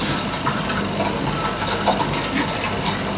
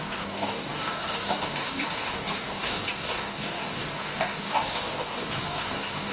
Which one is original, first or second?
first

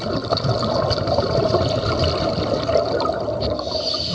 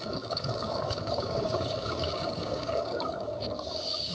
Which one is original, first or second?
first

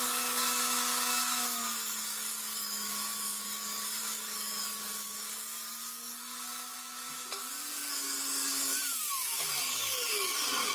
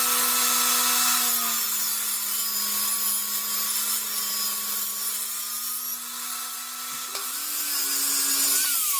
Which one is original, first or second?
second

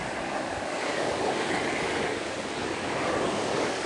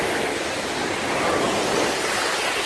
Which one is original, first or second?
second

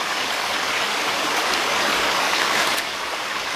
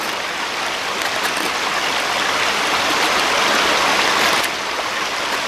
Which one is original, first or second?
second